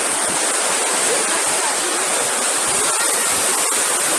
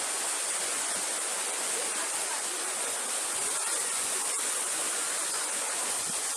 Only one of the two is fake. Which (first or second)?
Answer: second